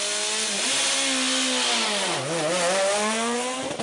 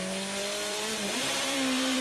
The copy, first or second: second